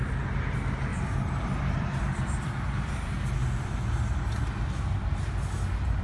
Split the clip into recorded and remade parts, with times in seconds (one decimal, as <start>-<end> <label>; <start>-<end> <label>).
0.0-0.9 recorded; 0.9-3.7 remade; 3.7-6.0 recorded

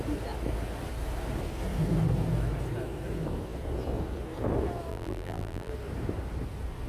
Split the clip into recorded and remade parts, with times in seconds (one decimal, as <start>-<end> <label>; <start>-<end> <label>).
0.0-4.9 recorded; 4.9-5.7 remade; 5.7-6.9 recorded

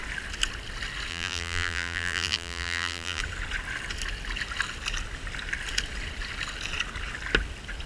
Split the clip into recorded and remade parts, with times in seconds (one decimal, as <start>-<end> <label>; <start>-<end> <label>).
0.0-1.1 recorded; 1.1-3.2 remade; 3.2-7.9 recorded

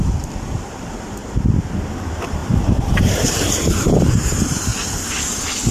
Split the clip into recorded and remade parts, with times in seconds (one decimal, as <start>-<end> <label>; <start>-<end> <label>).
0.0-1.2 remade; 1.2-1.8 recorded; 1.8-4.7 remade; 4.7-5.7 recorded

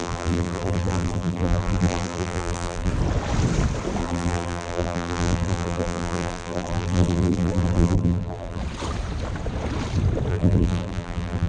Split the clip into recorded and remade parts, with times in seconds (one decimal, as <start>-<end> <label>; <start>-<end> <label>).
0.0-2.9 remade; 2.9-4.0 recorded; 4.0-8.6 remade; 8.6-10.3 recorded; 10.3-11.5 remade

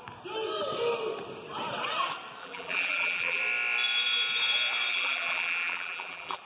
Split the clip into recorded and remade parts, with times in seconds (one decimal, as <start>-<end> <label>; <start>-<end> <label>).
0.0-2.4 recorded; 2.4-3.4 remade; 3.4-4.9 recorded; 4.9-6.4 remade

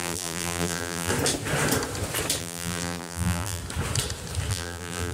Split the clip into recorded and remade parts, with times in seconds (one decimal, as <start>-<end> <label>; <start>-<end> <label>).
0.0-1.1 remade; 1.1-2.4 recorded; 2.4-3.6 remade; 3.6-4.5 recorded; 4.5-5.1 remade

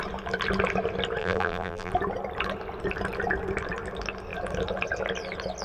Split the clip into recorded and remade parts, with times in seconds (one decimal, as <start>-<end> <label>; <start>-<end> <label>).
0.0-1.2 recorded; 1.2-1.9 remade; 1.9-5.6 recorded